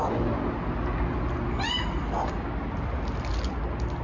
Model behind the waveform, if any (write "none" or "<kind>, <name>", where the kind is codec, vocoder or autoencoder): none